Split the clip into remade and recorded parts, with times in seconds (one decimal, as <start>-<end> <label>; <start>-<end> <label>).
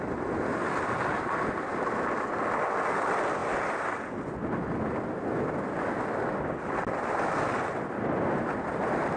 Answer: 0.0-9.2 recorded